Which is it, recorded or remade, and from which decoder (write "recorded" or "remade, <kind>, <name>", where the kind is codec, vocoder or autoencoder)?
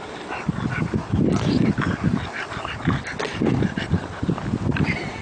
recorded